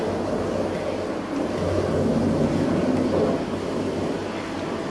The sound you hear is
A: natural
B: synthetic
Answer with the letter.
A